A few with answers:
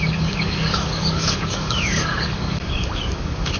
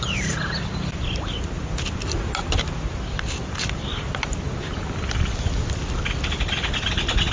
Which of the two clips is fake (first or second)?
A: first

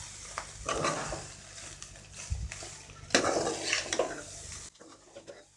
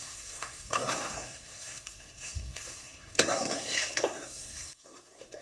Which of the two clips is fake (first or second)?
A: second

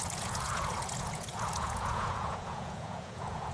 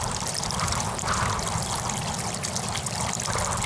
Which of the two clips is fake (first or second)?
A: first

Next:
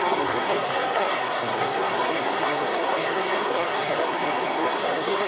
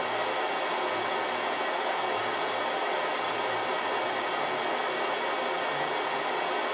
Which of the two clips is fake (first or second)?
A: first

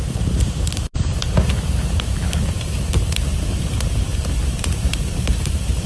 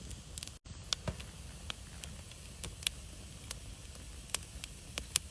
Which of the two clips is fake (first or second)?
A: first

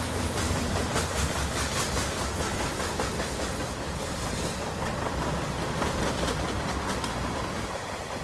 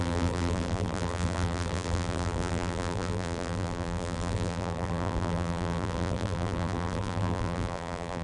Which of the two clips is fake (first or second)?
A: second